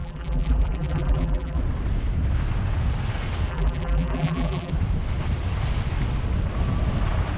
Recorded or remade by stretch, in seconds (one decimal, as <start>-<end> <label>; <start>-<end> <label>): 0.0-1.6 remade; 1.6-3.5 recorded; 3.5-4.7 remade; 4.7-7.4 recorded